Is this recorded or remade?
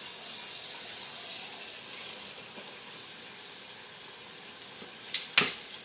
recorded